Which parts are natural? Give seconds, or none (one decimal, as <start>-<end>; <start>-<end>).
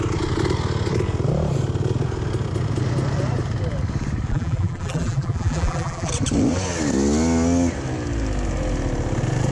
0.0-4.3; 6.1-9.5